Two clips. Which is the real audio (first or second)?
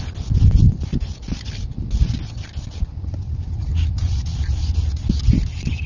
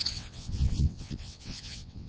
first